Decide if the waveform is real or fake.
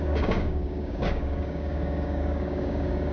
fake